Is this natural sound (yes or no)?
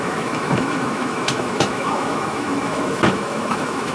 no